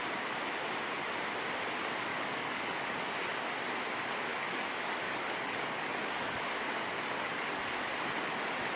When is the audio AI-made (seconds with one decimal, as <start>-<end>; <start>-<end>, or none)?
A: 2.1-3.3; 4.3-7.6